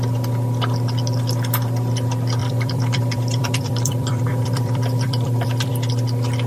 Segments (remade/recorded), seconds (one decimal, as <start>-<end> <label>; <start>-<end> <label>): 0.0-2.4 recorded; 2.4-5.7 remade; 5.7-6.5 recorded